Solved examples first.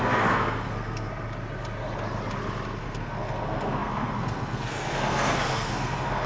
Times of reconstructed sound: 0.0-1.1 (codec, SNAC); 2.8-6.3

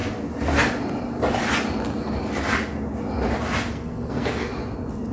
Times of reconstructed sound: 3.7-4.5 (codec, SNAC)